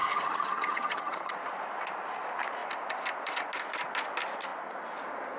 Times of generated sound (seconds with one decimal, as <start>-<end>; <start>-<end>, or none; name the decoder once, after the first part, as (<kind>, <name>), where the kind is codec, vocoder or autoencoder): 0.0-1.3 (vocoder, HiFi-GAN)